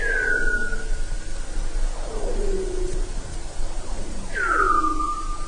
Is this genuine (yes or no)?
yes